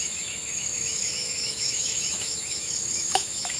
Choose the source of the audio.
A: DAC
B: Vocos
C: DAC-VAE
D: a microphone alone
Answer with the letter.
C